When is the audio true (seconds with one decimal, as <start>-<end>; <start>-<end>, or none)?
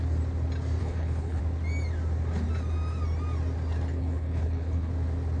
0.0-0.8; 1.4-3.9; 4.9-5.4